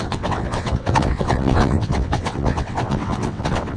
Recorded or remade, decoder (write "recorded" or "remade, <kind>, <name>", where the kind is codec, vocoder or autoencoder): remade, vocoder, WaveNeXt